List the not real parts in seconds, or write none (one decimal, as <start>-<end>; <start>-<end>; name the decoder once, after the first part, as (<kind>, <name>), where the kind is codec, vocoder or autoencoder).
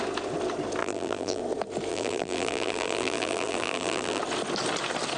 0.8-1.4 (vocoder, BigVGAN v2); 1.9-4.2